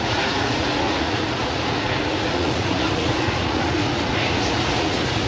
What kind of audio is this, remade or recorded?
remade